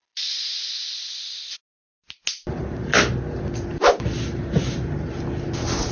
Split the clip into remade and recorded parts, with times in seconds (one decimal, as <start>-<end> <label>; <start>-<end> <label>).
0.0-2.5 recorded; 2.5-2.9 remade; 2.9-3.9 recorded; 3.9-5.9 remade

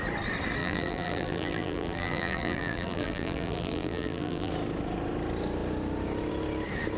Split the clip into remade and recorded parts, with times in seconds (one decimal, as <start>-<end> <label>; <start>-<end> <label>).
0.0-0.6 recorded; 0.6-4.5 remade; 4.5-7.0 recorded

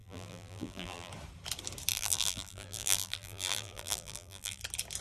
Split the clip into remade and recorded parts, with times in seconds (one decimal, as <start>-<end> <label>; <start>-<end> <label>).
0.0-1.1 remade; 1.1-1.9 recorded; 1.9-4.6 remade; 4.6-5.0 recorded